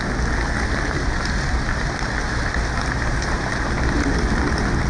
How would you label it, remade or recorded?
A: recorded